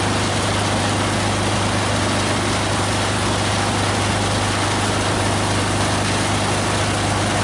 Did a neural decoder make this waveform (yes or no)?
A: no